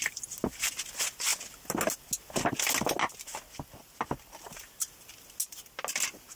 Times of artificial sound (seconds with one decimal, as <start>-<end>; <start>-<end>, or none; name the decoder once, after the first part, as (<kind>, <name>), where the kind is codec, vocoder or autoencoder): none